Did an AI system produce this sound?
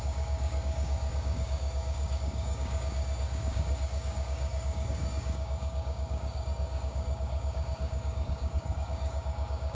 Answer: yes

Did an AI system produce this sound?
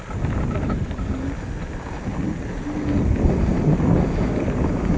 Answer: no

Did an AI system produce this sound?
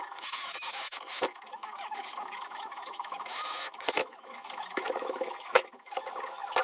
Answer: yes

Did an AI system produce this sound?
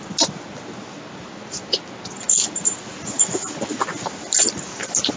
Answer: no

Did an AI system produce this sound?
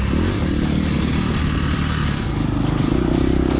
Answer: no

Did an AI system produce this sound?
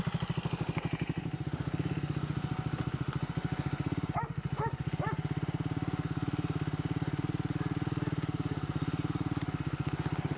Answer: no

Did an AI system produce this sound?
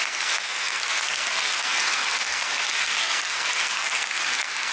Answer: yes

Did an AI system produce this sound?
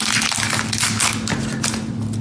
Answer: no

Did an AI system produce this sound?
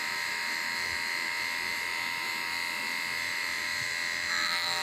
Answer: yes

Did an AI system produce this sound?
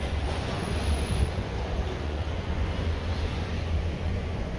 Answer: yes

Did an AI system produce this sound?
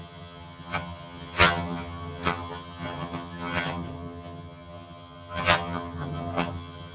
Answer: yes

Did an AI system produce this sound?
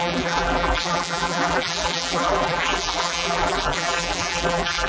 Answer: yes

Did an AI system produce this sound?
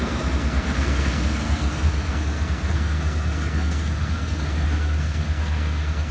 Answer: yes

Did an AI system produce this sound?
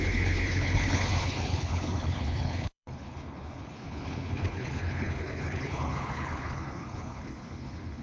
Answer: yes